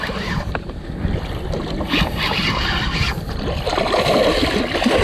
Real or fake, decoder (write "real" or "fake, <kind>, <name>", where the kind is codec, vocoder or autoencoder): fake, vocoder, BigVGAN v2